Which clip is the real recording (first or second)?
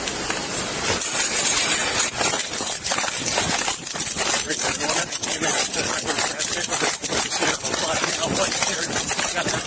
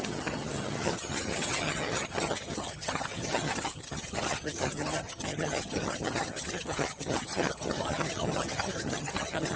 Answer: first